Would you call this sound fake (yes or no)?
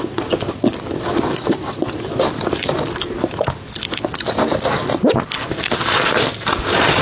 no